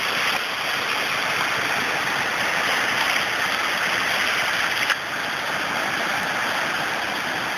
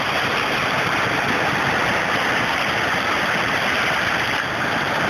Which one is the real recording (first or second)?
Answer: first